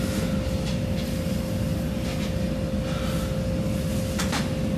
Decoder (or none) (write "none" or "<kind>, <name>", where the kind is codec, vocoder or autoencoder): none